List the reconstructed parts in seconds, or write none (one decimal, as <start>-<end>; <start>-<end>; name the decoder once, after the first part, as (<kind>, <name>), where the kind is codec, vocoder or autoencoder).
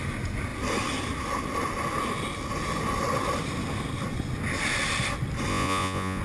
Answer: 5.5-6.2 (vocoder, Vocos)